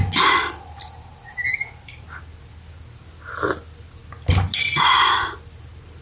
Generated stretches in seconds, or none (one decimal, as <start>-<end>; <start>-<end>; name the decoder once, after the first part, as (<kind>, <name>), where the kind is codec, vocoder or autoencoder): none